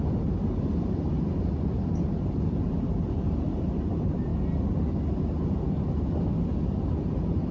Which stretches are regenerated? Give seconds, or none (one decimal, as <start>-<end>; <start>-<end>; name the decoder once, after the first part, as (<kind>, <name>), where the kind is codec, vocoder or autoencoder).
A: 0.0-4.3 (vocoder, BigVGAN v2); 6.6-7.5